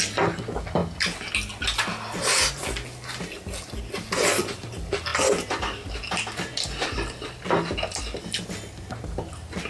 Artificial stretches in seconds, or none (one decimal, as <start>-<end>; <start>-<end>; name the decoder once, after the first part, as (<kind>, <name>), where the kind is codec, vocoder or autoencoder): none